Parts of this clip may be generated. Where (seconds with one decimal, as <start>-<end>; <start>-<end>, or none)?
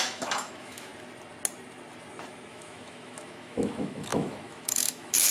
0.0-0.9; 2.5-5.3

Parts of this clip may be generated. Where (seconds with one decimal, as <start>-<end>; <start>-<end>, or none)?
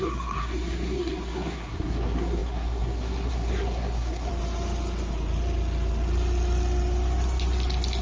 0.0-4.3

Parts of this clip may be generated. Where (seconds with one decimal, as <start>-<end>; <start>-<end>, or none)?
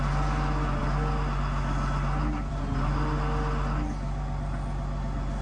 none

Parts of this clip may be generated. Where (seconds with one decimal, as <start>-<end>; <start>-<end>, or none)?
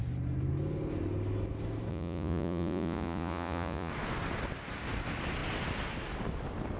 1.9-3.9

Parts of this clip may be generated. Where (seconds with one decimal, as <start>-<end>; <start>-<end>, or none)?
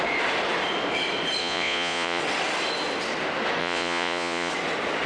1.4-2.2; 3.6-4.5